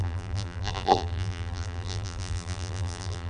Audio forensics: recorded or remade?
remade